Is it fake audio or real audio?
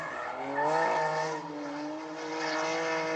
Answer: real